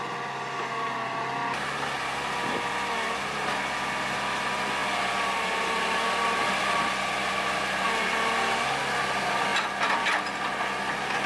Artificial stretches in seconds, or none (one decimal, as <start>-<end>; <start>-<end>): none